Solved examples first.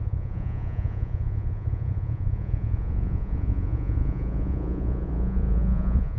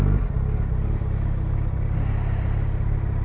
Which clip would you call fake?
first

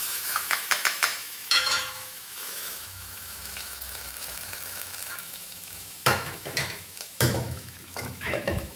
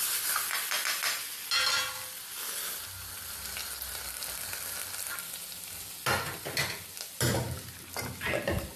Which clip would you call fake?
first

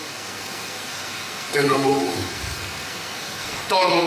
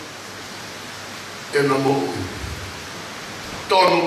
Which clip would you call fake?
first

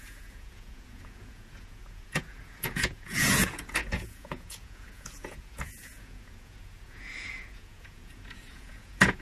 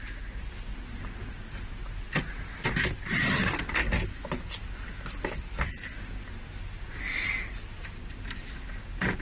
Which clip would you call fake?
first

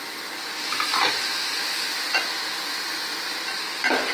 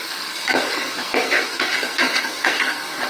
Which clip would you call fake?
second